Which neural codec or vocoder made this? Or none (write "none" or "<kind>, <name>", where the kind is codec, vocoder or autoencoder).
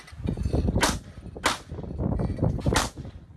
none